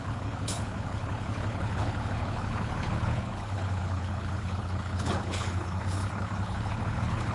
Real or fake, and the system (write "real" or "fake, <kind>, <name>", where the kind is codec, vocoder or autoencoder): fake, codec, HILCodec